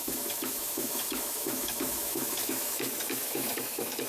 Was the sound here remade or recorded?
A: remade